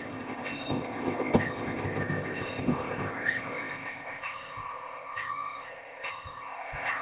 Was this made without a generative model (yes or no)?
no